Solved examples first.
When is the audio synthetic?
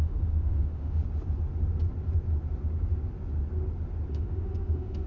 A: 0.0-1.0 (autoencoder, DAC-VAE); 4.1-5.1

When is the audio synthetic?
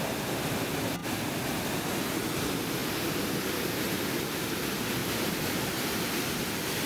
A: 5.0-5.6 (vocoder, BigVGAN v2)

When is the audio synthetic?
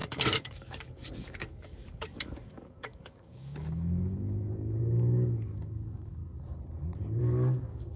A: 0.0-6.2 (codec, DAC); 7.2-8.0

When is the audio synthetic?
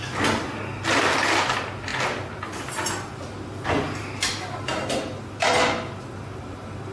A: none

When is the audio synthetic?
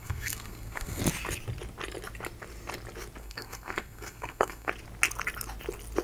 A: 0.0-1.0 (codec, SNAC); 3.2-4.7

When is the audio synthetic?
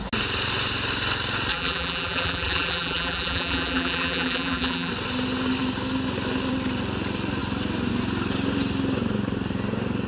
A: 1.5-4.9 (vocoder, BigVGAN v2)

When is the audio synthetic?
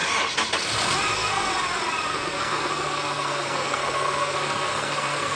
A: 1.1-1.5 (codec, SNAC); 2.1-5.4